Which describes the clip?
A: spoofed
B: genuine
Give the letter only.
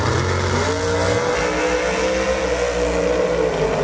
B